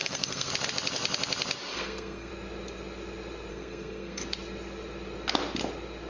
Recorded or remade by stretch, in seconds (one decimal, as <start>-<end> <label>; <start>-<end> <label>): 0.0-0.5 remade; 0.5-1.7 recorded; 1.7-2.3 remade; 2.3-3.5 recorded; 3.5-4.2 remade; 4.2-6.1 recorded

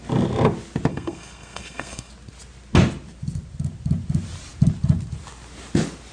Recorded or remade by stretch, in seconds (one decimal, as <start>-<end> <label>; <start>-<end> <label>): 0.0-0.9 recorded; 0.9-2.1 remade; 2.1-6.1 recorded

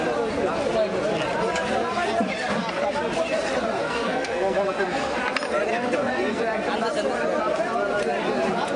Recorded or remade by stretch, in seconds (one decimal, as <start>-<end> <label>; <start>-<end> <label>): 0.0-3.8 recorded; 3.8-5.2 remade; 5.2-5.7 recorded; 5.7-6.4 remade; 6.4-8.8 recorded

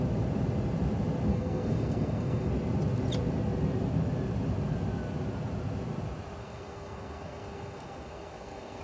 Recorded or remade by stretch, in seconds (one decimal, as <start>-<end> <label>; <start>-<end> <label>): 0.0-1.3 recorded; 1.3-2.5 remade; 2.5-6.4 recorded; 6.4-8.8 remade

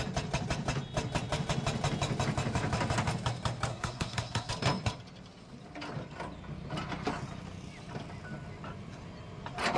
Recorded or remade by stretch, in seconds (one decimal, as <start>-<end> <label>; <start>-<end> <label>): 0.0-3.7 recorded; 3.7-4.5 remade; 4.5-9.8 recorded

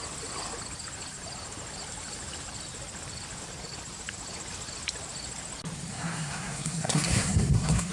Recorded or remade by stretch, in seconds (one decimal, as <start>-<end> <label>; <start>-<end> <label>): 0.0-5.9 recorded; 5.9-7.9 remade

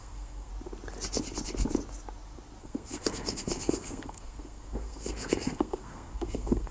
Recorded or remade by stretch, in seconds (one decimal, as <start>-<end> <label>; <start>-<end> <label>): 0.0-0.5 remade; 0.5-2.6 recorded; 2.6-6.7 remade

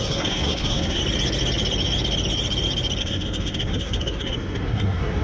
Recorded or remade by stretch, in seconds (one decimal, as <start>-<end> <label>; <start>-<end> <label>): 0.0-1.0 remade; 1.0-3.0 recorded; 3.0-5.2 remade